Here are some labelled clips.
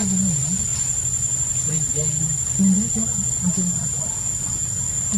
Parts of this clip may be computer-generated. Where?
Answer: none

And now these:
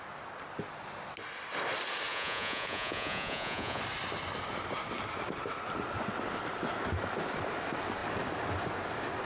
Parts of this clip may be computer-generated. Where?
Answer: 2.1-3.8 (vocoder, Vocos)

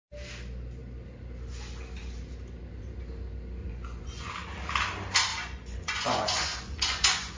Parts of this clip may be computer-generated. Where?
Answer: 3.6-4.3 (vocoder, Vocos); 5.3-7.4

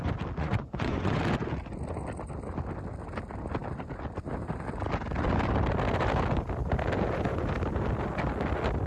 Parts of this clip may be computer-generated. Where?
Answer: 0.4-1.2 (vocoder, Vocos)

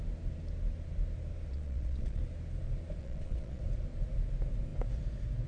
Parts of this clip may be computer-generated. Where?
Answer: 1.5-2.2 (vocoder, Vocos); 3.0-3.6